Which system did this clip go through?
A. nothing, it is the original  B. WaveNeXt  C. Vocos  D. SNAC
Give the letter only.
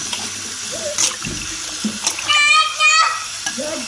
A